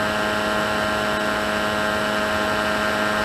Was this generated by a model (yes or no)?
no